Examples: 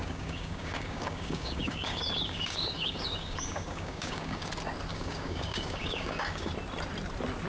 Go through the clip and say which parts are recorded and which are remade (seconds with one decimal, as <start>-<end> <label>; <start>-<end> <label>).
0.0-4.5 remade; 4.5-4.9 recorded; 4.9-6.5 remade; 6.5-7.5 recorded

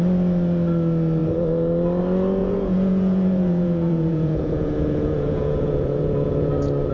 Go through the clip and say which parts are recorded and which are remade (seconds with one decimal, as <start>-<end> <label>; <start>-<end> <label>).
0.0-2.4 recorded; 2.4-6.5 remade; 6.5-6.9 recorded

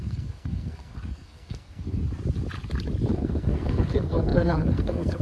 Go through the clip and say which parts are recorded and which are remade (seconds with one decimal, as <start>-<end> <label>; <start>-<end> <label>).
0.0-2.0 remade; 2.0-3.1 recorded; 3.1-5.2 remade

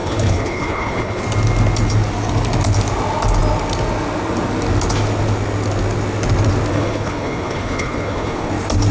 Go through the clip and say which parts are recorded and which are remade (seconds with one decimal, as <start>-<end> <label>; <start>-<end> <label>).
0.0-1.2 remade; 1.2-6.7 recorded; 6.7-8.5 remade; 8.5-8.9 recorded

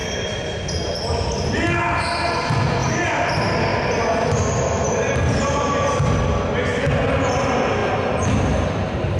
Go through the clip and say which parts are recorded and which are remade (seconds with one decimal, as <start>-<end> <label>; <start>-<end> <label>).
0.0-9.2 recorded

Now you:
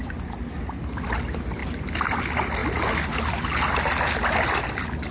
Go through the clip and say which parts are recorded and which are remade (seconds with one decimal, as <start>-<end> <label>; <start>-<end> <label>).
0.0-5.1 recorded